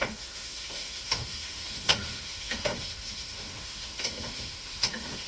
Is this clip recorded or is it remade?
remade